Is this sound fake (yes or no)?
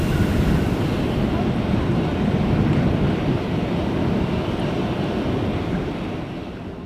no